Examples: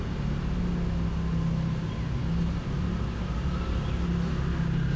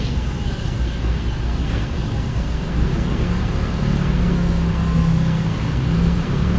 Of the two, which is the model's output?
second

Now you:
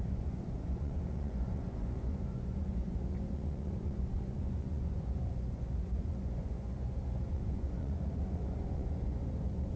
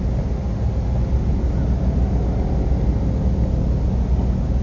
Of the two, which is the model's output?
first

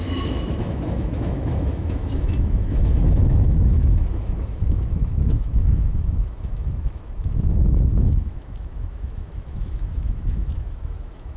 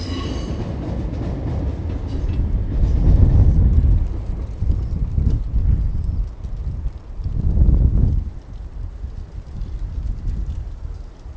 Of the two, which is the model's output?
first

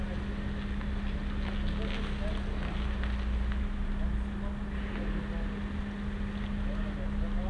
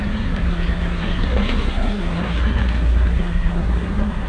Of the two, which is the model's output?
second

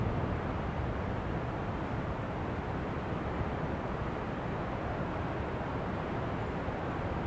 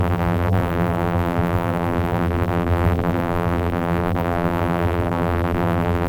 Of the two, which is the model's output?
second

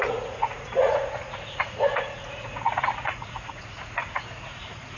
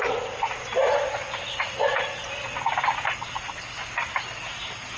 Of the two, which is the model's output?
first